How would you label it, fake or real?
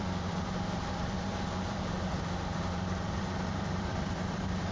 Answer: fake